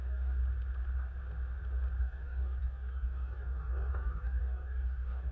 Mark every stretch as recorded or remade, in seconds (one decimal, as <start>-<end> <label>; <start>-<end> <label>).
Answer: 0.0-0.4 remade; 0.4-2.0 recorded; 2.0-5.3 remade